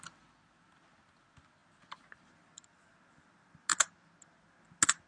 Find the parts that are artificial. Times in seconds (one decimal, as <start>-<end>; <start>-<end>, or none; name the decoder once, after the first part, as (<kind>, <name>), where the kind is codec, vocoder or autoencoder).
none